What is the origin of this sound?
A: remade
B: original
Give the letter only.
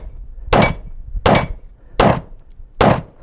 B